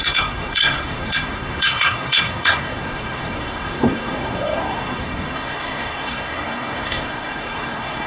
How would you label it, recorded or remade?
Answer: remade